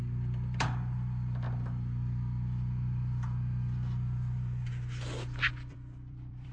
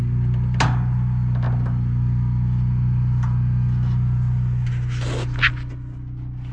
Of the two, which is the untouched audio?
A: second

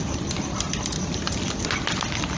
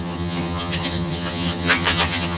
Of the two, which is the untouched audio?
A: first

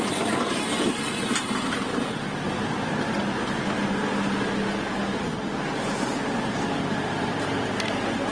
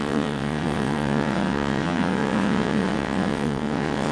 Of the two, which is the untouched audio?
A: first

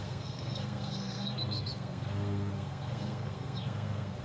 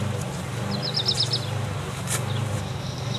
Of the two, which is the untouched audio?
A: second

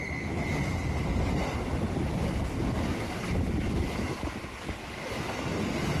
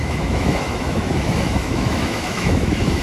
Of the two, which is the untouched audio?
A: first